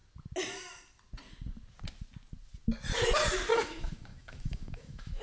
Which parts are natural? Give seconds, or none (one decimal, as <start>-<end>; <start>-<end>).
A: 0.0-3.5